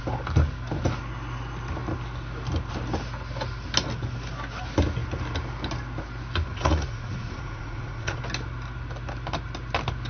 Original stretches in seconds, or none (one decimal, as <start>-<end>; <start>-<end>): 0.0-6.5; 8.2-10.1